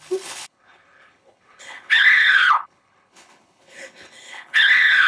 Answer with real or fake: fake